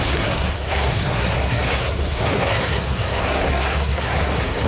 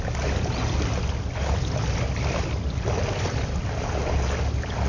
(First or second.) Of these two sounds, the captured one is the second